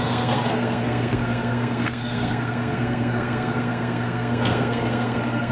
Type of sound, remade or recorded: remade